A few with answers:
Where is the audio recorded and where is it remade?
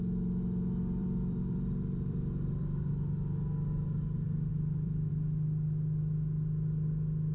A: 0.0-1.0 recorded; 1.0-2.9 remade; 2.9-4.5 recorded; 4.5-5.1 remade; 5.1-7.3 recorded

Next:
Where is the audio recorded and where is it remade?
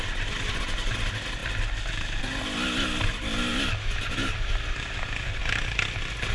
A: 0.0-6.3 recorded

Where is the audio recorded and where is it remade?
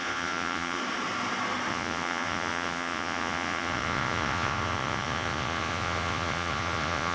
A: 0.0-0.8 remade; 0.8-1.7 recorded; 1.7-7.1 remade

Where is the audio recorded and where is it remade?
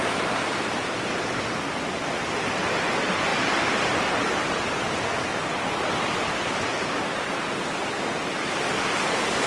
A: 0.0-3.3 recorded; 3.3-7.1 remade; 7.1-9.5 recorded